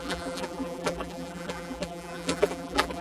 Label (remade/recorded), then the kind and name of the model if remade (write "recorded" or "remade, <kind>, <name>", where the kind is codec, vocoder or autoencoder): remade, vocoder, BigVGAN v2